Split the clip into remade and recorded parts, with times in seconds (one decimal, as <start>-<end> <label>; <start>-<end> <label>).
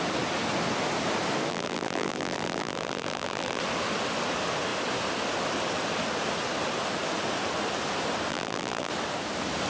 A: 0.0-1.5 recorded; 1.5-3.6 remade; 3.6-8.3 recorded; 8.3-8.9 remade; 8.9-9.7 recorded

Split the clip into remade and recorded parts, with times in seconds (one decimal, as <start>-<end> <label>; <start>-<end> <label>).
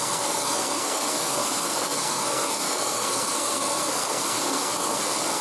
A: 0.0-5.4 remade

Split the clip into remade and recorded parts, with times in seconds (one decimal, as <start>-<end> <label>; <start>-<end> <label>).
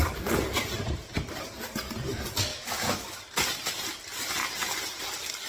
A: 0.0-2.5 recorded; 2.5-3.2 remade; 3.2-5.5 recorded